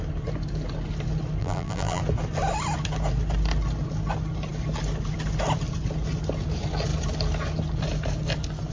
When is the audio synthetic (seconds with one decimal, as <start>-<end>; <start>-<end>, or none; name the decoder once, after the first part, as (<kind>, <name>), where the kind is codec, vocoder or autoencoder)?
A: 1.4-2.0 (vocoder, BigVGAN v2)